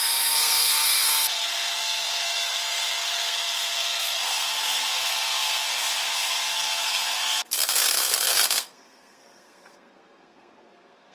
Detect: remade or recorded remade